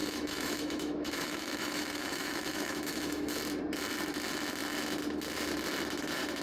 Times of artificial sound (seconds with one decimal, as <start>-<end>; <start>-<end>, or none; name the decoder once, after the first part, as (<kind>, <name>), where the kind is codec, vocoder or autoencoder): 0.0-3.3 (autoencoder, DAC-VAE)

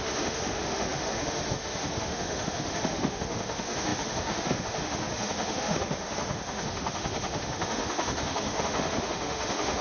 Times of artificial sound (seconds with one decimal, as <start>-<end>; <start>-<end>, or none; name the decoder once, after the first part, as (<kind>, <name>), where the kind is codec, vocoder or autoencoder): 0.0-9.8 (autoencoder, DAC-VAE)

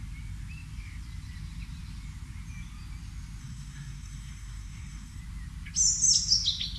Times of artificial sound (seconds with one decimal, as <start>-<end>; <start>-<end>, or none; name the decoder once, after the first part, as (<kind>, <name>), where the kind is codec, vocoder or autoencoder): 3.4-5.2 (codec, SNAC)

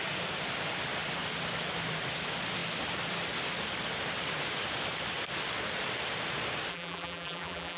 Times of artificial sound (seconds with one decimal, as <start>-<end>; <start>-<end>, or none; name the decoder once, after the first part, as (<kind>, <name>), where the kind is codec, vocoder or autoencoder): 6.7-7.8 (vocoder, BigVGAN v2)

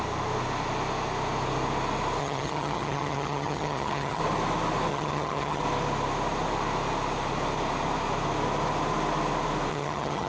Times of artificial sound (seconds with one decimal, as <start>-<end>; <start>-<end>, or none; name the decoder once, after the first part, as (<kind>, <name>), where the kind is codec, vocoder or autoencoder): 2.2-4.2 (vocoder, HiFi-GAN); 4.9-5.6; 9.7-10.3

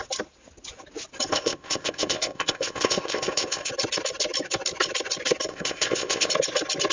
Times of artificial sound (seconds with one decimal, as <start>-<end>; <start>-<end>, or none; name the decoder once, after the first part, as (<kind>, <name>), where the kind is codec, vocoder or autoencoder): 1.3-3.7 (codec, ZipCodec); 5.5-6.3